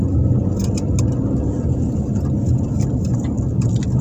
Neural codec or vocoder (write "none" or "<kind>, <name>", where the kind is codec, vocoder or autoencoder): none